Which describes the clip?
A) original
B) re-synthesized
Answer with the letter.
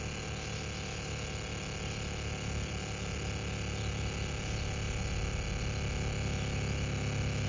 A